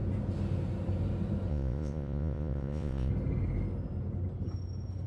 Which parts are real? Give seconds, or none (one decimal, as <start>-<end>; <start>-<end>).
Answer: 0.0-1.5; 3.1-5.1